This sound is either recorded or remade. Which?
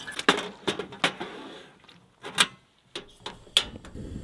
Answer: recorded